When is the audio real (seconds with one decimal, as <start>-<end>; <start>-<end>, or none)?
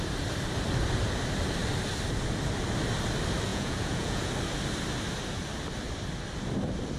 0.0-3.5; 4.3-7.0